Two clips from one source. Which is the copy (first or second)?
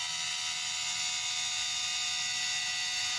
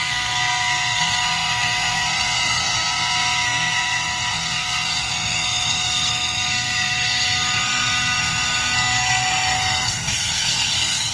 second